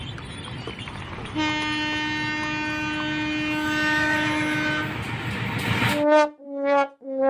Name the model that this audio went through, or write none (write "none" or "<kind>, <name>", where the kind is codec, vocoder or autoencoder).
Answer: none